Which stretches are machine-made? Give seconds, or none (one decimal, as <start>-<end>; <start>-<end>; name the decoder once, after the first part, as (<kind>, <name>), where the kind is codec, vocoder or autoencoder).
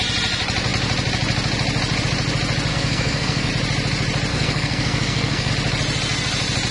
2.7-3.5 (codec, SNAC); 4.3-5.5